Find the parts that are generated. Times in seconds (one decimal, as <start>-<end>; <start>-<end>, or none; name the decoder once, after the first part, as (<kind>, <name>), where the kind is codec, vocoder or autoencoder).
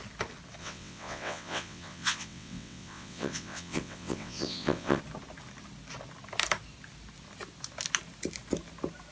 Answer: 0.6-5.0 (vocoder, WaveNeXt)